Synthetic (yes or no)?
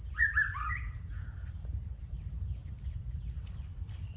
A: yes